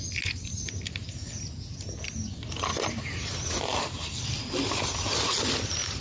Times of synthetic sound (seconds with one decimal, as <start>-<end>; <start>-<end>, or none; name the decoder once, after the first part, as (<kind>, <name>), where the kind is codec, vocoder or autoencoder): none